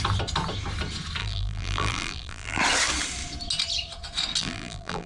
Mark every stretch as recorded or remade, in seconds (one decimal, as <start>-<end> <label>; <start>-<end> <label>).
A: 0.0-1.2 recorded; 1.2-2.6 remade; 2.6-4.4 recorded; 4.4-5.1 remade